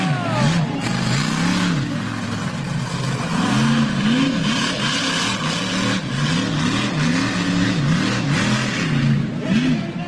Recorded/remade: recorded